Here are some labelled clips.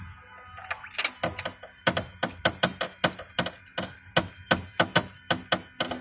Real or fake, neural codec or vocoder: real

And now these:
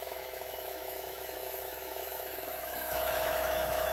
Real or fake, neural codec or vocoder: fake, autoencoder, DAC-VAE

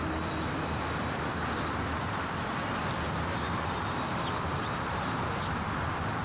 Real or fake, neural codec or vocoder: real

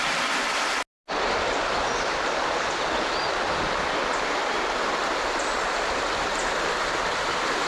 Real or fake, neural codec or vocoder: real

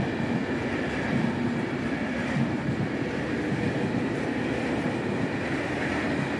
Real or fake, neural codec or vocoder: real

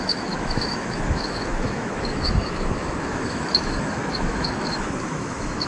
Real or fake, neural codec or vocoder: fake, autoencoder, DAC-VAE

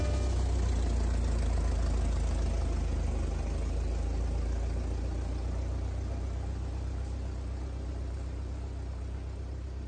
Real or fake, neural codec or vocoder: real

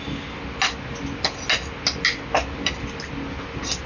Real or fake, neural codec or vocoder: real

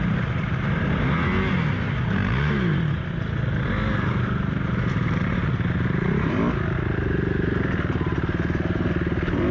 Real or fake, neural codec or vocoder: real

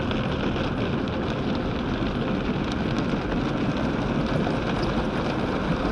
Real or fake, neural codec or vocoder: real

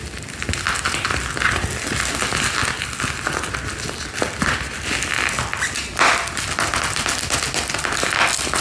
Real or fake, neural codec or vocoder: real